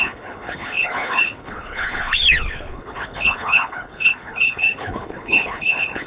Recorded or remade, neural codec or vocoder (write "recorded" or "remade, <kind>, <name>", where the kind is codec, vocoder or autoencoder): remade, codec, HILCodec